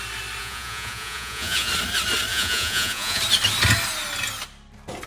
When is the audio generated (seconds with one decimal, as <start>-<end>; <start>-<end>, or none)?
0.4-1.7; 2.3-3.2